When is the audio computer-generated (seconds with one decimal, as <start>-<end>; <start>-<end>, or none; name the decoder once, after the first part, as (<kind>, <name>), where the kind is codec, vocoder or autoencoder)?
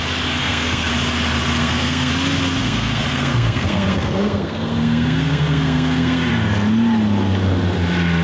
0.4-0.9 (codec, SNAC); 1.6-2.1; 2.6-6.3